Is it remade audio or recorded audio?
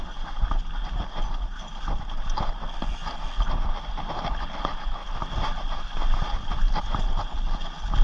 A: recorded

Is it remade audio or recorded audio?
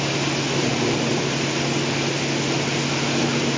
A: recorded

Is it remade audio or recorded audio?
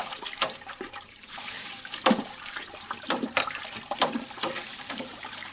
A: remade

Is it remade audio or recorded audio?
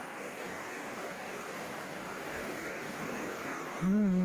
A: remade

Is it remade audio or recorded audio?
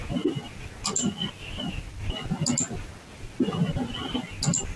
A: recorded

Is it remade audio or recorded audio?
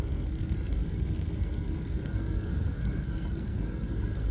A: remade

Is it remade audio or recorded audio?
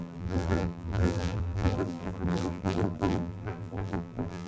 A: remade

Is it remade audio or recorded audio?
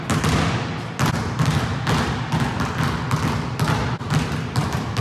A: recorded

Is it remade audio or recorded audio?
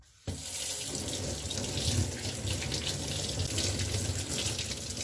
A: recorded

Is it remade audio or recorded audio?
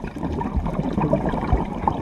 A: remade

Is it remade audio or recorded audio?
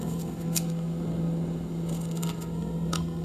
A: remade